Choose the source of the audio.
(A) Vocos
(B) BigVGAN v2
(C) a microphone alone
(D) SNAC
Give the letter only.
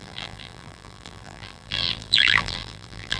B